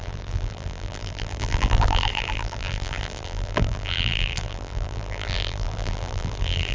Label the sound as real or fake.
fake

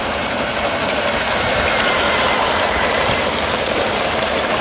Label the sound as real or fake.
fake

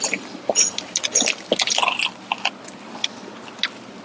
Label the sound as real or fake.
real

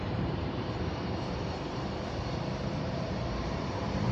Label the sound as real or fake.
fake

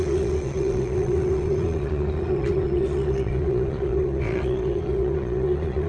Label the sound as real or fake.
fake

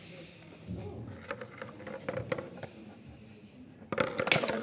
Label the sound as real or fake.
real